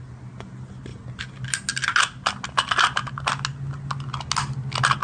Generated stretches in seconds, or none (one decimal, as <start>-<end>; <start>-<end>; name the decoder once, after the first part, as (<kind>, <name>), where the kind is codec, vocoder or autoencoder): none